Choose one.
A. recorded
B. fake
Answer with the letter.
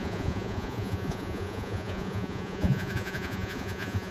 B